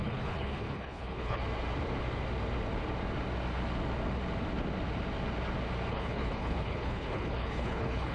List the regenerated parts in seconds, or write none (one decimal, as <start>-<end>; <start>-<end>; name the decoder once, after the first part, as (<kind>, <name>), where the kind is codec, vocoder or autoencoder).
0.0-1.4 (codec, HILCodec); 5.9-8.1